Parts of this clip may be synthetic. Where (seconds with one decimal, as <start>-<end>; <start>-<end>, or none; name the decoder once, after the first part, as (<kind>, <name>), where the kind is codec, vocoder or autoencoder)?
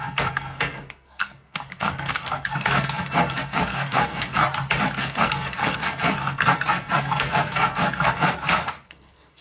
0.0-4.4 (codec, SNAC); 5.0-9.4